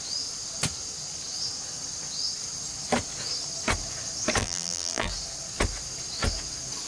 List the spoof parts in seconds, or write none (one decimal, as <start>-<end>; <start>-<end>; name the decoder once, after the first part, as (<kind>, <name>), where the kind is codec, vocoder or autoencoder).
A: 4.4-5.1 (vocoder, BigVGAN v2)